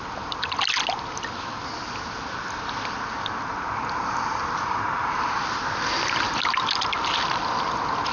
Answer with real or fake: real